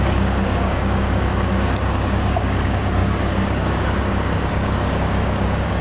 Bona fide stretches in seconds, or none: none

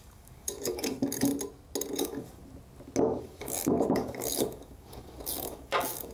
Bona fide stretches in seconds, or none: 1.3-1.9; 2.4-3.2

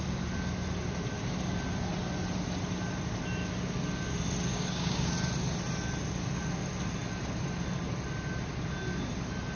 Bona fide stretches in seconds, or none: 0.0-4.5; 5.1-9.6